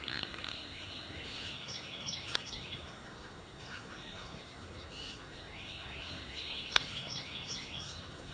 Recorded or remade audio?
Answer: remade